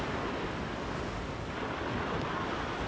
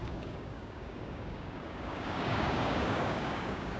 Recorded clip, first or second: first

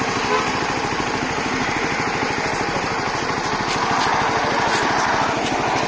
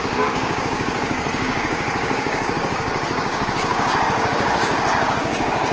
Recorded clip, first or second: first